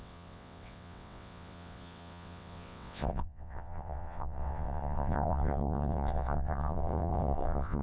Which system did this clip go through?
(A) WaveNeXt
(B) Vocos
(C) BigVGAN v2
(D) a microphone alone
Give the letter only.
A